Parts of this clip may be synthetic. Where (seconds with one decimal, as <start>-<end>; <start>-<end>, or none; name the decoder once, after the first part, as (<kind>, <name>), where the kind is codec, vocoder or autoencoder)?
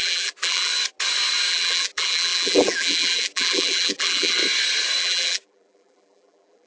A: 0.0-0.7 (vocoder, BigVGAN v2); 1.5-4.4; 5.0-6.7